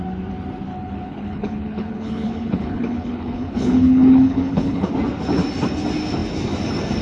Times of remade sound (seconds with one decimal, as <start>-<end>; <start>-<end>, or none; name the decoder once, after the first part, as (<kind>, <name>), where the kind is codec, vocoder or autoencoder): 0.7-4.9 (codec, HILCodec)